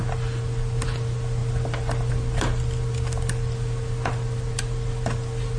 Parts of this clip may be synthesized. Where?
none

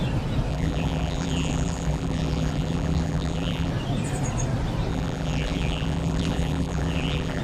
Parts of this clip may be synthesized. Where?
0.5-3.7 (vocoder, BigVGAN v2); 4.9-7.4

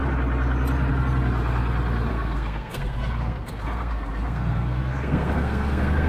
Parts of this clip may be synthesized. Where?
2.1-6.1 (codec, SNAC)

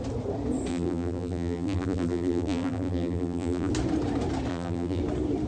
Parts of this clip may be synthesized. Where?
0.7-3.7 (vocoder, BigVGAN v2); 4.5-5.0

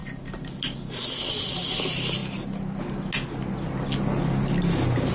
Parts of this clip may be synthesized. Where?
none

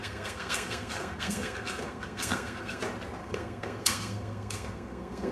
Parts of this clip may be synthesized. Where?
0.0-2.8 (codec, SNAC); 3.2-5.3